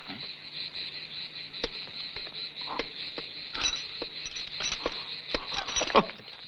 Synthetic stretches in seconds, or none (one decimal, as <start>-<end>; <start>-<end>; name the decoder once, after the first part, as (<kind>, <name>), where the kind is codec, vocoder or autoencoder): none